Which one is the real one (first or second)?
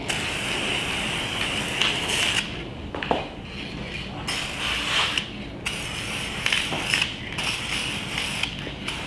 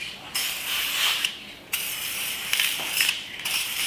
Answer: first